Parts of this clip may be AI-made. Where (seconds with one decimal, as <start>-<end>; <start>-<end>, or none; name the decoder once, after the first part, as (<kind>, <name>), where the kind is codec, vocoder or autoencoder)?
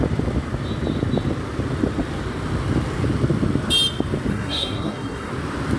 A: 4.3-5.3 (codec, SNAC)